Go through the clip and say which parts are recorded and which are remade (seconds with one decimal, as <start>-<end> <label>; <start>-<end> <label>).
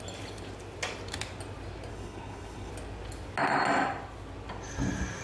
0.0-1.9 recorded; 1.9-2.7 remade; 2.7-5.2 recorded